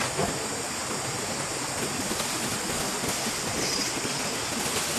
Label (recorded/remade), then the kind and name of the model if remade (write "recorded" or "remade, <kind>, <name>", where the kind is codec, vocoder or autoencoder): recorded